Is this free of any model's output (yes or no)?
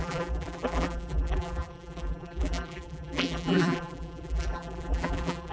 no